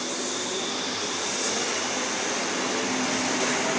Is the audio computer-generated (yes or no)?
no